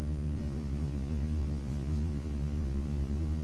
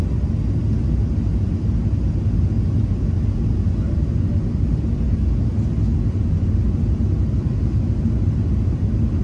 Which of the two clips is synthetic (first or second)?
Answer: first